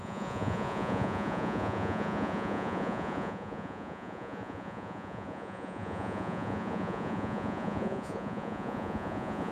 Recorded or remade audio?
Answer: remade